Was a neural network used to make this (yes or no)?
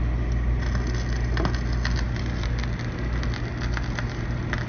no